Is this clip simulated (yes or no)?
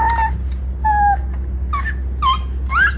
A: no